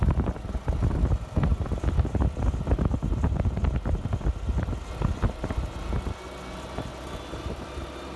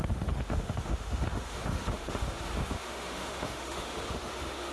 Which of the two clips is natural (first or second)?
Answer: first